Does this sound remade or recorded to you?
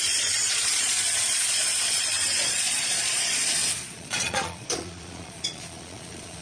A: remade